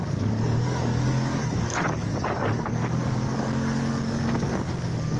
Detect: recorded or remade remade